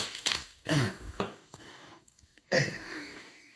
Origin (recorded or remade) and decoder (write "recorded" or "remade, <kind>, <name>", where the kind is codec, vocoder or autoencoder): remade, codec, DAC